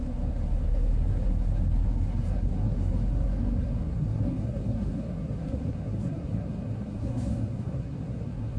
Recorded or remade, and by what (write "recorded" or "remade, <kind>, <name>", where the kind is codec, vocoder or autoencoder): remade, codec, SNAC